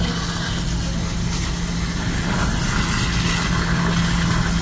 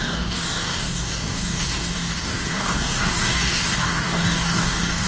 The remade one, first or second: second